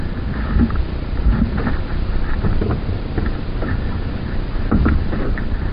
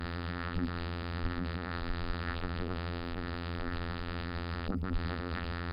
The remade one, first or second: second